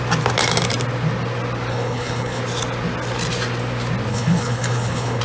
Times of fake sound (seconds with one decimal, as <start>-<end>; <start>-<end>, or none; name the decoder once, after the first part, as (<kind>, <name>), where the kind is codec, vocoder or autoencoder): 1.7-2.4 (codec, HILCodec); 4.1-5.2